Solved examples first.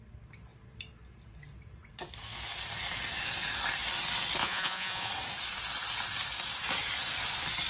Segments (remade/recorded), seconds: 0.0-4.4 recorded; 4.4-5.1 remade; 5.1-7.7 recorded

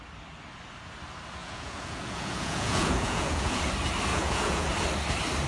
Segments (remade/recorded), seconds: 0.0-1.4 recorded; 1.4-3.6 remade; 3.6-4.1 recorded; 4.1-4.7 remade; 4.7-5.5 recorded